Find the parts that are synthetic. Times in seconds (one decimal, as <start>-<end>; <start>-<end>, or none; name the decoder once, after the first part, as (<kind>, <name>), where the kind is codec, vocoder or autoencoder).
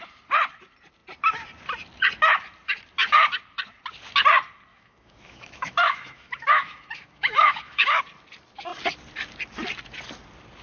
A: 4.7-8.0 (autoencoder, DAC-VAE)